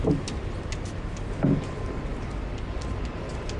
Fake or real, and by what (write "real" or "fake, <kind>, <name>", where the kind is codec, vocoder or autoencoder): real